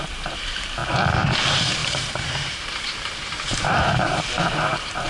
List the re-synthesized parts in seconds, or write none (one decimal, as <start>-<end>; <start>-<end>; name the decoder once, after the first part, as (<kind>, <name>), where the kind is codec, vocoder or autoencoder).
1.8-5.1 (vocoder, BigVGAN v2)